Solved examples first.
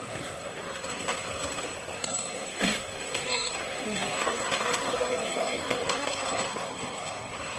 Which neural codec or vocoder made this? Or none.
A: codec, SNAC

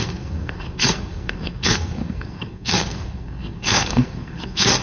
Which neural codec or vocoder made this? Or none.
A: codec, SNAC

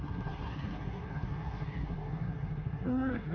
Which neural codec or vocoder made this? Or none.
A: codec, SNAC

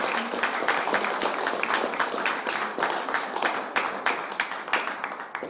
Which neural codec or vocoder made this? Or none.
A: none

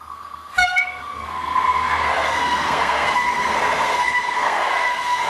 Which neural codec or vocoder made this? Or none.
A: codec, SNAC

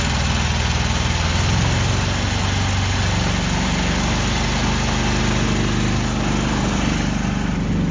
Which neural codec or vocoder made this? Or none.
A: none